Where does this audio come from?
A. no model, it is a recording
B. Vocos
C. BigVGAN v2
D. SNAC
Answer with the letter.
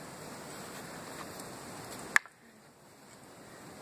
A